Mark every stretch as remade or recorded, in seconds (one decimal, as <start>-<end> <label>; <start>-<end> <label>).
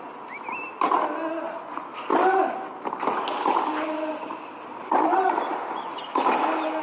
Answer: 0.0-6.8 recorded